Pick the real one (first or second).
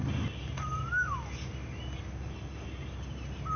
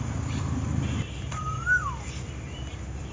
first